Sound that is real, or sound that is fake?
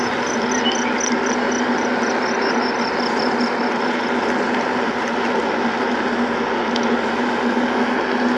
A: real